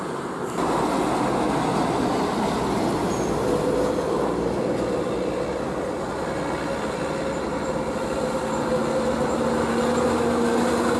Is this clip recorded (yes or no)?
yes